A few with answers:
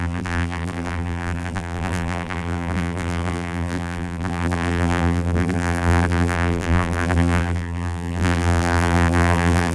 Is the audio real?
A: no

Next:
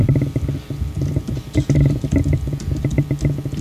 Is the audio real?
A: yes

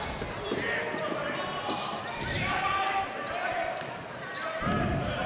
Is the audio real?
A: yes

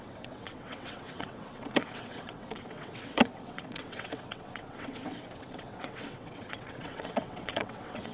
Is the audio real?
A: no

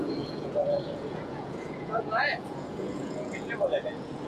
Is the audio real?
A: no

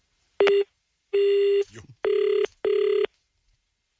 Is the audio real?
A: yes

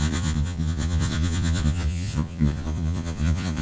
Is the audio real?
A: no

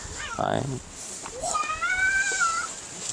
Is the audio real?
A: no